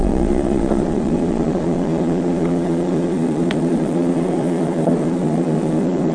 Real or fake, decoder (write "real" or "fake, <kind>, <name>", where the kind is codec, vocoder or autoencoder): fake, vocoder, Vocos